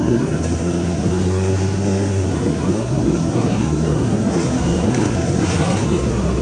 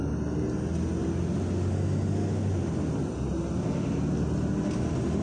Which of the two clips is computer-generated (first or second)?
first